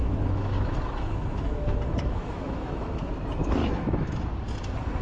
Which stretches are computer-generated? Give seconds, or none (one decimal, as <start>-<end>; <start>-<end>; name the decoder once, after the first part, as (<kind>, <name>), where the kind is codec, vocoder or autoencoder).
0.0-3.0 (autoencoder, DAC-VAE); 3.6-4.2